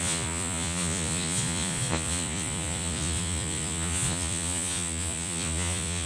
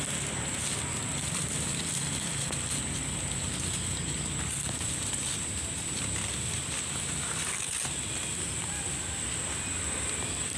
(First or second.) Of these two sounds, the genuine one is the second